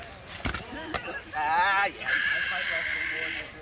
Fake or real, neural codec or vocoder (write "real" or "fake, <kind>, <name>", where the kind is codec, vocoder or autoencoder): real